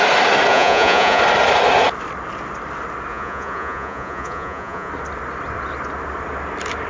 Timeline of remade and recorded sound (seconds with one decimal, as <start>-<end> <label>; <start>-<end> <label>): 0.0-0.5 recorded; 0.5-1.2 remade; 1.2-3.1 recorded; 3.1-4.9 remade; 4.9-6.9 recorded